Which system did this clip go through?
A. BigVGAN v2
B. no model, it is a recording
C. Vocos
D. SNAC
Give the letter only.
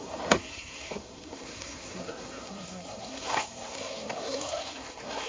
D